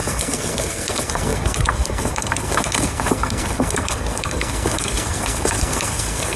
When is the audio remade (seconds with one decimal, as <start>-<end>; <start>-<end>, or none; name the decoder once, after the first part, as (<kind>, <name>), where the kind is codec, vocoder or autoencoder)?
0.0-6.4 (codec, SNAC)